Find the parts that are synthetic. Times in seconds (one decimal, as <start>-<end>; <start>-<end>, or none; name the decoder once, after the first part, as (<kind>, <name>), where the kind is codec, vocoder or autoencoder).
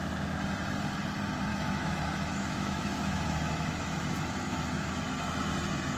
1.5-5.1 (autoencoder, DAC-VAE)